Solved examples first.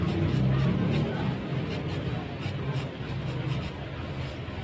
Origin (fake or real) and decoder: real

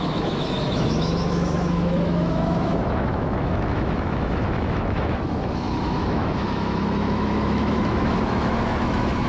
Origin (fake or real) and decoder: fake, autoencoder, DAC-VAE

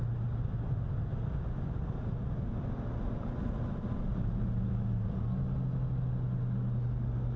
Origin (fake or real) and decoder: real